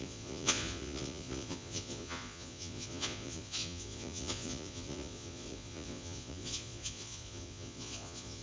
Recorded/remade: remade